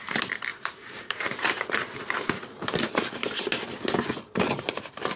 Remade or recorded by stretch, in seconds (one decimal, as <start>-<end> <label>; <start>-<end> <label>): 0.0-0.5 recorded; 0.5-2.9 remade; 2.9-5.2 recorded